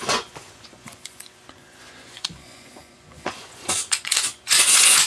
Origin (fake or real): fake